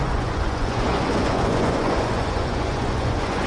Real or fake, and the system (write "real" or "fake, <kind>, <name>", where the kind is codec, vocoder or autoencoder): fake, vocoder, Vocos